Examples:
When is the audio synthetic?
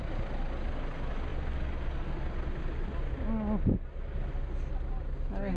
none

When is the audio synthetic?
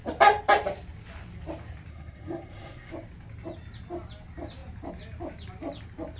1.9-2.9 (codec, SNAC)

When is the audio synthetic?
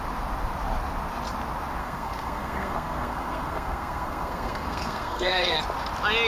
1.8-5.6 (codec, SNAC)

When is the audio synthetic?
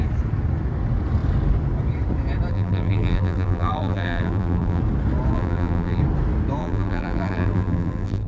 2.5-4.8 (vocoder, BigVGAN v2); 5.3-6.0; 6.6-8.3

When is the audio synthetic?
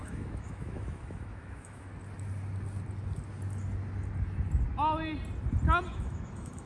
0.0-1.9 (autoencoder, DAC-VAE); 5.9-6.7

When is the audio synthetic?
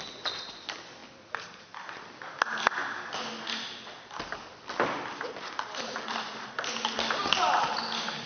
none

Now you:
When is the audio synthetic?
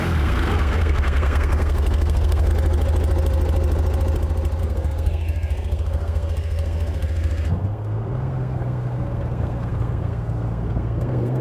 0.0-2.5 (codec, SNAC); 4.6-11.4